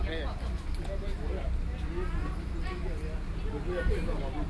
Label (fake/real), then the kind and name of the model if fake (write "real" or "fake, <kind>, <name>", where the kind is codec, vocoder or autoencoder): real